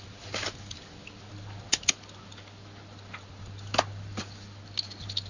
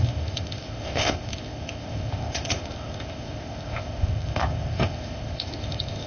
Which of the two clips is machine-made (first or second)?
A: second